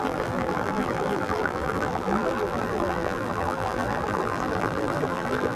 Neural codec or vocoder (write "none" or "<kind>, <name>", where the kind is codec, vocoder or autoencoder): vocoder, BigVGAN v2